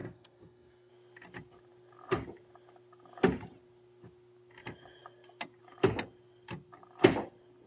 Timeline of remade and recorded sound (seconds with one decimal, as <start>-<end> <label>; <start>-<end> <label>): 0.0-0.9 remade; 0.9-7.7 recorded